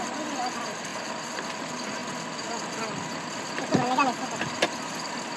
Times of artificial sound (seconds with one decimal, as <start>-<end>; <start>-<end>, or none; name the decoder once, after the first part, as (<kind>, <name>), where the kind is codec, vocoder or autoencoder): none